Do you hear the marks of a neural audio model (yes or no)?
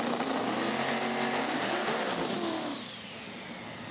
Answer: no